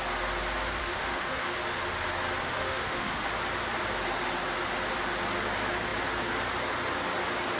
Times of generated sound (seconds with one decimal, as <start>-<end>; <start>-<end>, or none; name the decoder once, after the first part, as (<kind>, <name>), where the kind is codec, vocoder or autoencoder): 0.8-1.4 (autoencoder, DAC-VAE); 2.4-3.3